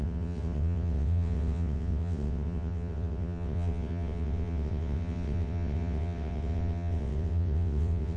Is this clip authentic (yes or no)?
no